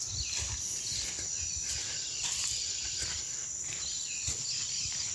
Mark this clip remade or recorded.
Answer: recorded